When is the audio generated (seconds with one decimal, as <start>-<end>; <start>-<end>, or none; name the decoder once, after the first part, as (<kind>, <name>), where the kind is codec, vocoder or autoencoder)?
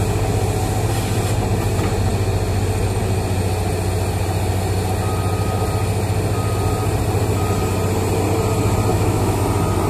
8.9-9.4 (autoencoder, DAC-VAE)